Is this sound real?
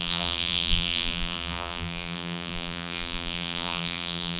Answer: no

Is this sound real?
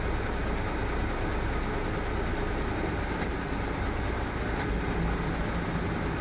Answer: yes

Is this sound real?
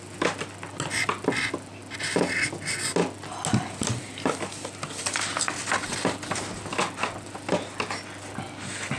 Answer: yes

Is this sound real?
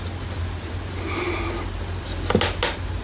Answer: yes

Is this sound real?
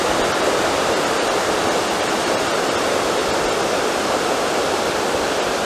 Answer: yes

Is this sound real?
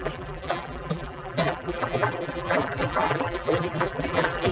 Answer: no